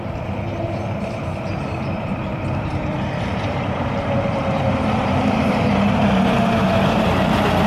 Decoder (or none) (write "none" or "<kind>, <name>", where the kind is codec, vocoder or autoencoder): vocoder, BigVGAN v2